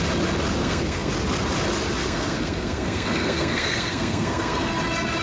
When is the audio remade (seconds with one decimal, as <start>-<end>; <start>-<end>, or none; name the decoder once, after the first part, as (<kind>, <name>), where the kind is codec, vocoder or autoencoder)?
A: 0.6-1.1 (codec, SNAC); 2.0-4.7